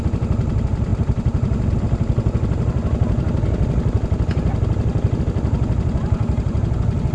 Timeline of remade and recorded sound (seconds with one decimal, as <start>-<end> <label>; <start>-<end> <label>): 0.0-7.1 recorded